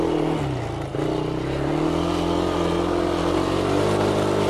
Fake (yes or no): no